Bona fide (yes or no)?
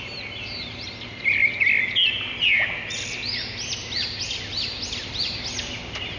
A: yes